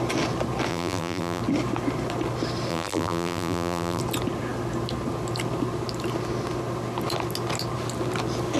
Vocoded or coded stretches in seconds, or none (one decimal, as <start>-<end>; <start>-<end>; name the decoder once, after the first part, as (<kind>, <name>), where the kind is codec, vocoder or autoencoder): 0.7-1.4 (vocoder, BigVGAN v2); 2.7-4.0